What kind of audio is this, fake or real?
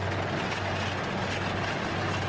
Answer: real